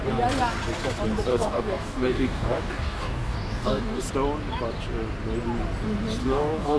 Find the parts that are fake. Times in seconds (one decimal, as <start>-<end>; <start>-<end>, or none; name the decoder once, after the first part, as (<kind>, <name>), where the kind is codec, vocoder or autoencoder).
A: 1.3-4.0 (codec, DAC); 6.2-6.8